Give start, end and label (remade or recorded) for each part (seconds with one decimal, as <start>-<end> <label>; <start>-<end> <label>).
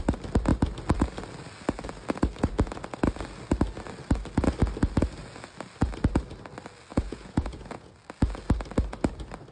0.0-6.9 recorded; 6.9-7.9 remade; 7.9-9.5 recorded